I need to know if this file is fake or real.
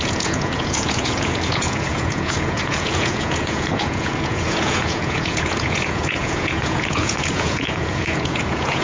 fake